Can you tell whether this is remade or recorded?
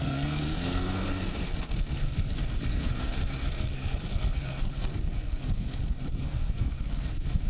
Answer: remade